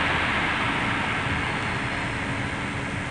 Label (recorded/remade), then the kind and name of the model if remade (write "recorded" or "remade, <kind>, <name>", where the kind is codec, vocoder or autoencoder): recorded